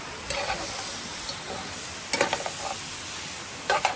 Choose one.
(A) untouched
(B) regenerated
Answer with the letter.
A